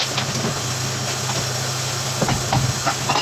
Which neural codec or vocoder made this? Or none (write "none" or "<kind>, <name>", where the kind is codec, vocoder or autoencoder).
none